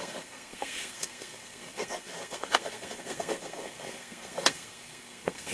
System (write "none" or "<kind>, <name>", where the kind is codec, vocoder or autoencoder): codec, SNAC